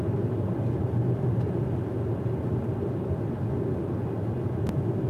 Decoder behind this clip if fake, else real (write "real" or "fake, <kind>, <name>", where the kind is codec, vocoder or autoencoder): real